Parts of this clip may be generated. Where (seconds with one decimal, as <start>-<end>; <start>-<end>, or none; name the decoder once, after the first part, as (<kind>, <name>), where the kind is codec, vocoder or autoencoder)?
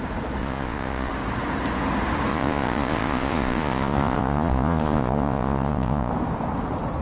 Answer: 0.4-1.1 (vocoder, Vocos); 2.3-6.1